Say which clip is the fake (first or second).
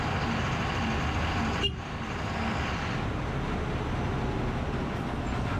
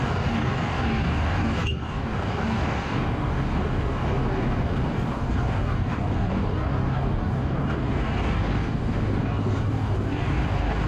second